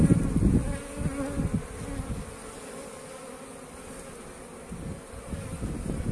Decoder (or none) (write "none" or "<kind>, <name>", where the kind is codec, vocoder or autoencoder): none